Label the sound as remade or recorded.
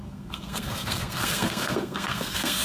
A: remade